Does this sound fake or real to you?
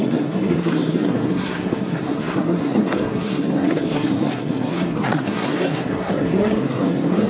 fake